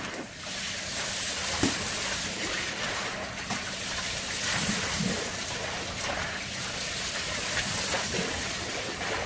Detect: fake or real real